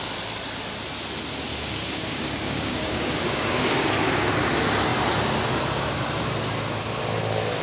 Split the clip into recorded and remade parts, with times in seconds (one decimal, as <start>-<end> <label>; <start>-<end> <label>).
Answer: 0.0-1.5 recorded; 1.5-3.9 remade; 3.9-7.6 recorded